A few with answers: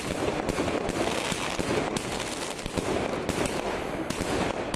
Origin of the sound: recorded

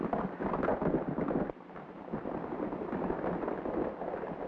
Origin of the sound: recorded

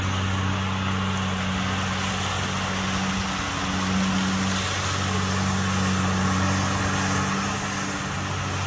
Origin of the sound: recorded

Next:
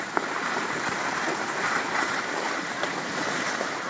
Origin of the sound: recorded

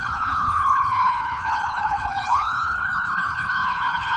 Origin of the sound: remade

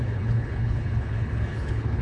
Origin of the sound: remade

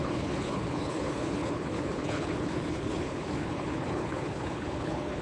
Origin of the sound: remade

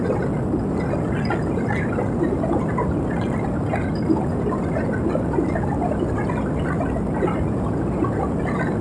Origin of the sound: recorded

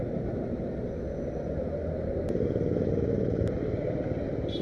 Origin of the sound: recorded